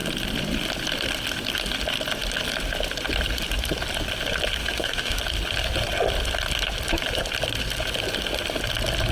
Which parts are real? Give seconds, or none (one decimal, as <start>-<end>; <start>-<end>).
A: 0.0-4.6; 5.2-9.1